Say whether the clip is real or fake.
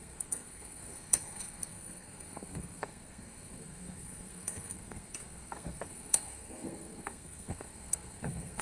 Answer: fake